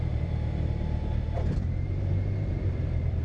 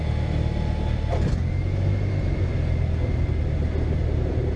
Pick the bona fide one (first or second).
second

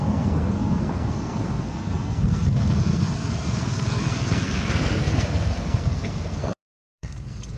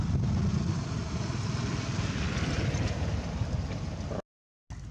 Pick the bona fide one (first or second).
second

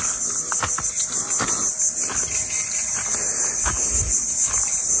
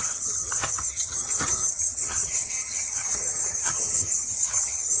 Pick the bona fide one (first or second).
first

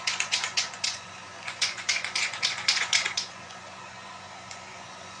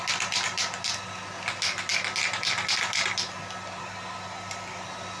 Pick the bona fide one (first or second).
second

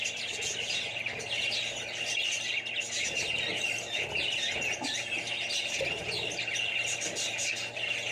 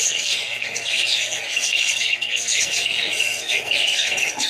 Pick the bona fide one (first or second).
first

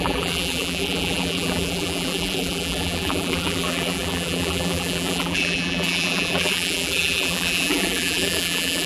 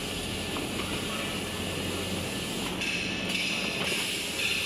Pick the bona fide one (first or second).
second